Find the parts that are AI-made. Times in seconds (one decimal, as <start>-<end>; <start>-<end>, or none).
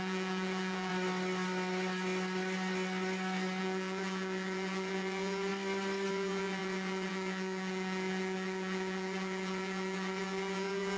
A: 0.0-0.9; 3.6-5.5; 6.1-11.0